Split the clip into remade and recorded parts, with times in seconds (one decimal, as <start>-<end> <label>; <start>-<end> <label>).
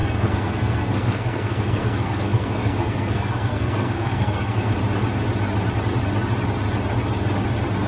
0.0-4.7 remade; 4.7-7.9 recorded